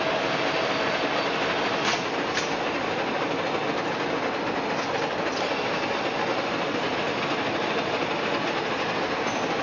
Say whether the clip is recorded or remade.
recorded